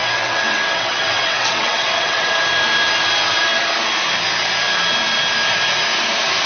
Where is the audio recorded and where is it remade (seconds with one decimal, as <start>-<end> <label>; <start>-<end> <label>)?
0.0-2.4 remade; 2.4-6.5 recorded